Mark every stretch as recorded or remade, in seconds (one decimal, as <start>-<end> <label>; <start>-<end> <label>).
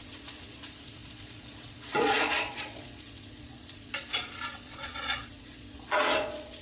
0.0-6.6 remade